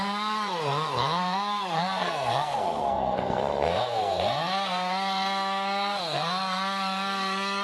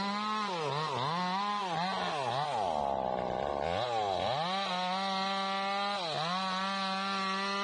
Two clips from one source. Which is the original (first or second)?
second